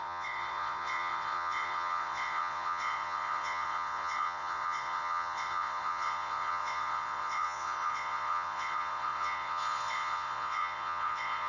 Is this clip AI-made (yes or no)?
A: yes